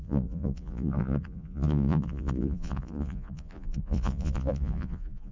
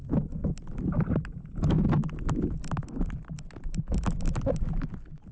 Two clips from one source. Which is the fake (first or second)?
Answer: first